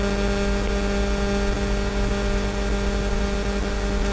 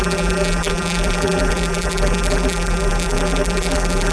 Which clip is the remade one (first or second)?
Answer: second